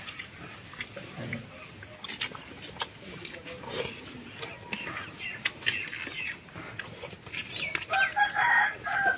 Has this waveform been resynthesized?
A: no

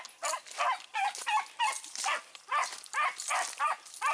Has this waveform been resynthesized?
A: no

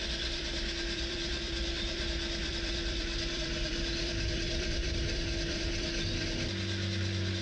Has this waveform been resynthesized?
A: yes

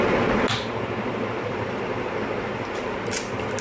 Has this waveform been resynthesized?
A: no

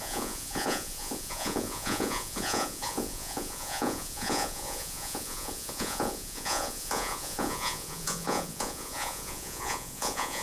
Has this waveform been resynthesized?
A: yes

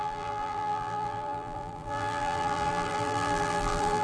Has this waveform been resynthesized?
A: yes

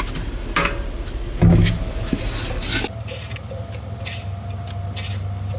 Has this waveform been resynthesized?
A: no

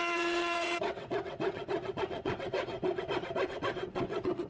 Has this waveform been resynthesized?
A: yes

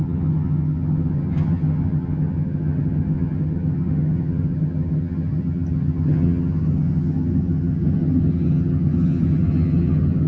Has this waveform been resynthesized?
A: yes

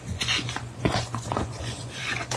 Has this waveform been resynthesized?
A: yes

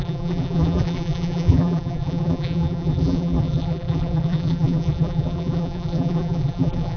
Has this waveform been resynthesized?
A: yes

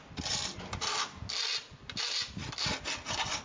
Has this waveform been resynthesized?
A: no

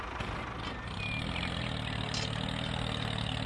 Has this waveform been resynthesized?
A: no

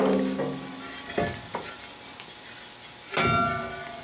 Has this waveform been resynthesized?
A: no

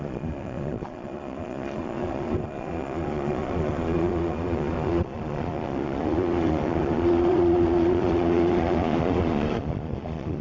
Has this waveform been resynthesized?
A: yes